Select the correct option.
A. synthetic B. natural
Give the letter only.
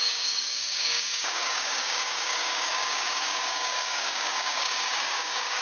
A